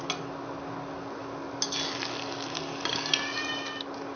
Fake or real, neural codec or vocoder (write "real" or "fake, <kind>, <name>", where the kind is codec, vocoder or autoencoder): real